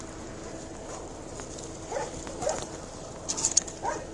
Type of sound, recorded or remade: recorded